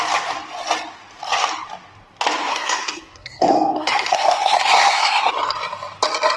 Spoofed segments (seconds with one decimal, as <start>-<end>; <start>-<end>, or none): 2.5-5.3

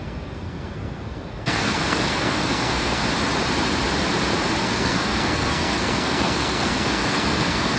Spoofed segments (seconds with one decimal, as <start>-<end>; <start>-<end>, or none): 0.0-3.0; 4.6-7.8